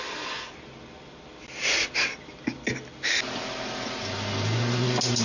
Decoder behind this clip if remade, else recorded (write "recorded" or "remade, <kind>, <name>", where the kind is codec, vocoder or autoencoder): recorded